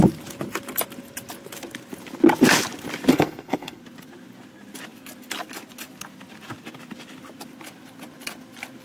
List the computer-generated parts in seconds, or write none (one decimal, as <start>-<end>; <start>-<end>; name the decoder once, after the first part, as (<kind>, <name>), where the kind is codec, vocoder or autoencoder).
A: 3.1-3.8 (codec, SNAC)